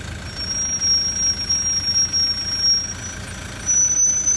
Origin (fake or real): real